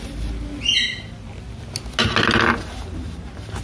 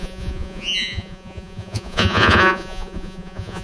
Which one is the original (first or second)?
first